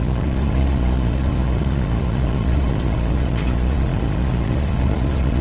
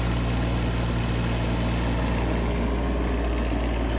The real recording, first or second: second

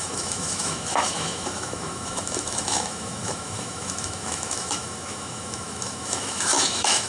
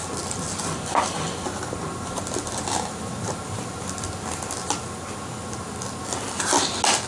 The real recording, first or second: second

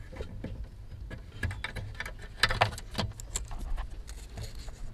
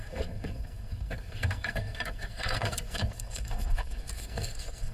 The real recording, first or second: first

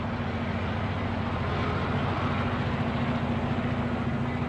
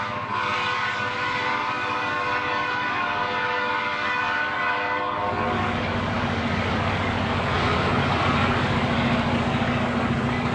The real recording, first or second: first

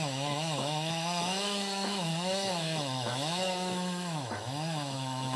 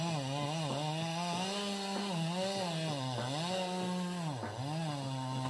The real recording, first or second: second